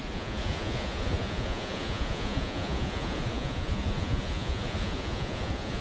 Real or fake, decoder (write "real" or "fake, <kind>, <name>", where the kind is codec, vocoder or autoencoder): fake, vocoder, Vocos